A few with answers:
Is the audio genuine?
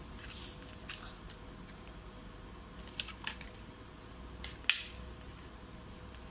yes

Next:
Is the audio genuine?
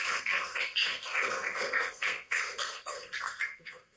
no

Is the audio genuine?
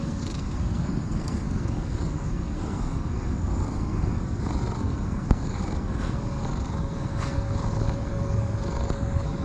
no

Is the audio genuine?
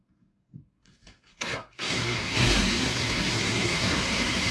no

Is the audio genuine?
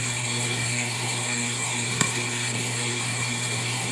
no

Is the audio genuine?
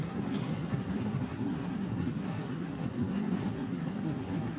no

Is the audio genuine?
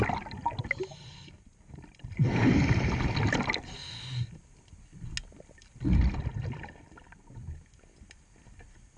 yes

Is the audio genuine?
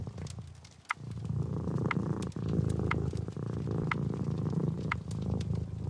yes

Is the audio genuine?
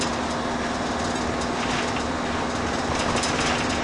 yes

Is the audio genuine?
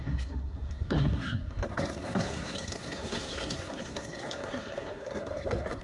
no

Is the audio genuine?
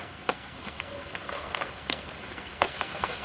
no